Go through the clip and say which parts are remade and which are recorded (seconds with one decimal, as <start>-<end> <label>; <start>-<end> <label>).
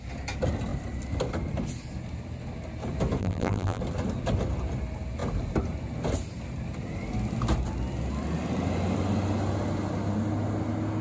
0.0-3.2 recorded; 3.2-3.8 remade; 3.8-11.0 recorded